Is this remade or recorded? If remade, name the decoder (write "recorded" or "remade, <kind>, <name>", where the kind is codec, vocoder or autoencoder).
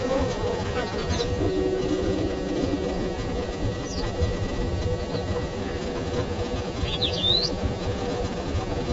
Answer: remade, vocoder, Vocos